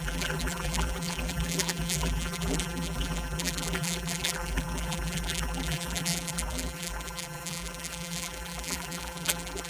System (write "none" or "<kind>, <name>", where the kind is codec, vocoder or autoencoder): vocoder, BigVGAN v2